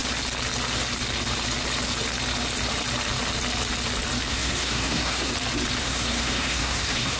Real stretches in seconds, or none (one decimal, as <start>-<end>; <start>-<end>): 0.0-4.3; 5.3-5.8